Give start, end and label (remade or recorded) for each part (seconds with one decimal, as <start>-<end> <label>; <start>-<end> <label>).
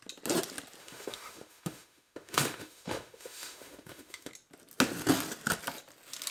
0.0-0.8 recorded; 0.8-4.3 remade; 4.3-6.3 recorded